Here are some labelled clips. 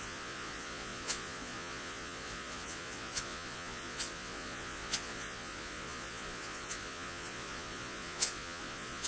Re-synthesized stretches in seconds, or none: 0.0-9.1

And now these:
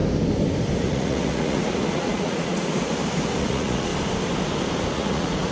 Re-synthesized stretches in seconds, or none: 0.8-2.7; 3.4-3.9; 4.9-5.5

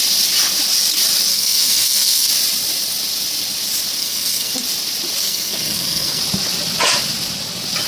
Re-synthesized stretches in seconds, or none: 1.3-2.3; 4.0-4.5; 5.2-6.2

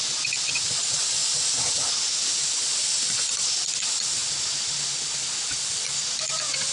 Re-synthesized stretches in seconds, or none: none

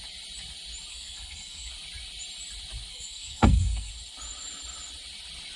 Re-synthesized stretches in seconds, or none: 0.9-1.7; 2.9-3.9

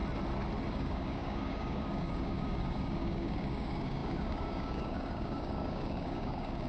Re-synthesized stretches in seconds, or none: 0.7-6.7

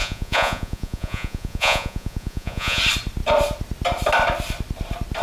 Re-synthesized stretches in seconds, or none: 0.0-2.8